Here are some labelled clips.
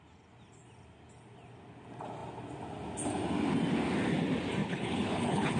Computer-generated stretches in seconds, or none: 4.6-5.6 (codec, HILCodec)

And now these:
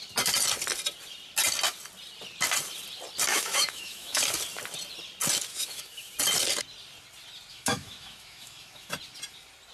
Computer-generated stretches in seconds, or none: 3.3-4.2 (autoencoder, DAC-VAE); 5.5-6.1; 7.5-8.9

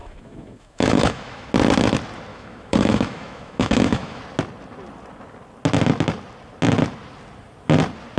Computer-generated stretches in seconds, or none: 0.0-1.5 (autoencoder, DAC-VAE); 2.3-4.2

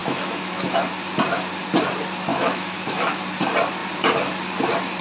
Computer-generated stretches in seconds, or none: 0.0-0.9 (autoencoder, DAC-VAE); 2.3-3.2

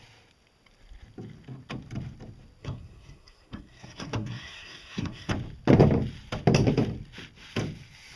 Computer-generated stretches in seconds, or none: 2.6-5.3 (codec, SNAC)